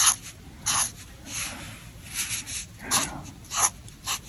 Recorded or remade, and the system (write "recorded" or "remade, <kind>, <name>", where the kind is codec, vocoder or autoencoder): recorded